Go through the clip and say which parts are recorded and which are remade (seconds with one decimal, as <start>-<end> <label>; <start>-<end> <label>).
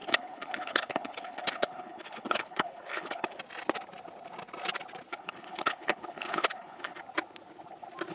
0.0-3.4 remade; 3.4-5.1 recorded; 5.1-7.0 remade; 7.0-8.1 recorded